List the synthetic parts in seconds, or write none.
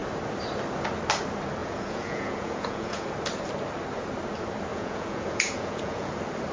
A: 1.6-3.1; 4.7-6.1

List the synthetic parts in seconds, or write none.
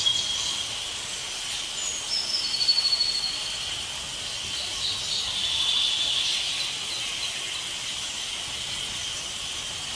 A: none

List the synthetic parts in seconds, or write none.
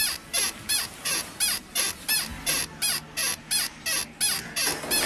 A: none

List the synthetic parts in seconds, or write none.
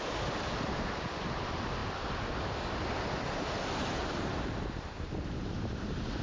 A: none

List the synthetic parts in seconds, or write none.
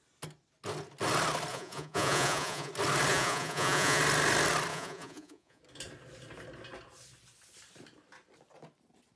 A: 1.5-2.7; 3.1-4.0; 4.7-5.6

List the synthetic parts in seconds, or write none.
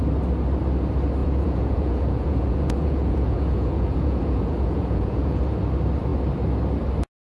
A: 1.2-5.4